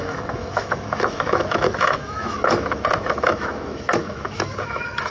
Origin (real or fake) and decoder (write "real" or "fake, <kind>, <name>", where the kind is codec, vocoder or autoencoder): fake, autoencoder, DAC-VAE